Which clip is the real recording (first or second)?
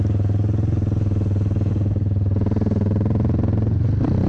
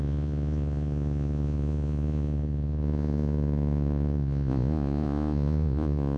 first